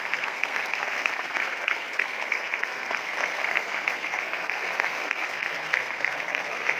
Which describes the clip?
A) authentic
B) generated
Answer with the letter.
B